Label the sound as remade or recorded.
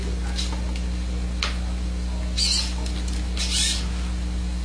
recorded